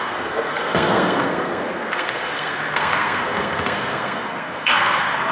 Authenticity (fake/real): fake